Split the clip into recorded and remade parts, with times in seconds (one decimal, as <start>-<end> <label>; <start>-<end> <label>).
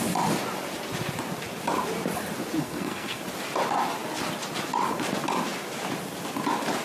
0.0-2.6 recorded; 2.6-3.2 remade; 3.2-6.8 recorded